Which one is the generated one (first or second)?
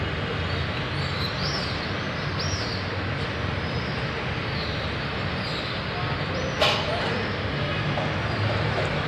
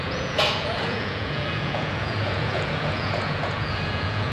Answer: second